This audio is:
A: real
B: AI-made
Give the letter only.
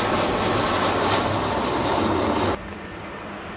A